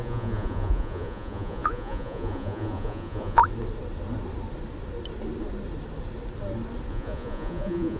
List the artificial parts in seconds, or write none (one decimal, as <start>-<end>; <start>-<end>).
0.0-3.4; 6.9-8.0